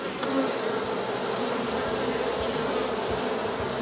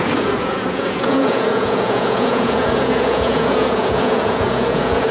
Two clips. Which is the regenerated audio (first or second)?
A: second